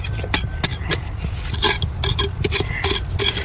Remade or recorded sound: recorded